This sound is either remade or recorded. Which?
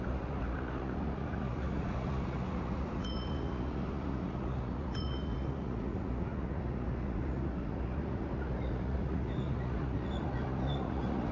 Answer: remade